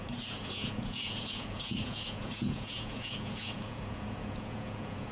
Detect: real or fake fake